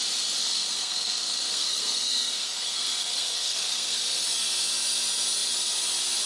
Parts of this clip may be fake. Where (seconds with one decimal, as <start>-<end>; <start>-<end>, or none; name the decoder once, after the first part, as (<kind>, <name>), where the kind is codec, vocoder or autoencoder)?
0.4-4.0 (codec, SNAC)